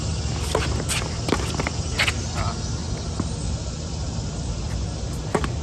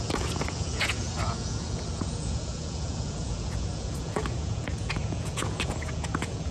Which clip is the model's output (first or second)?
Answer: second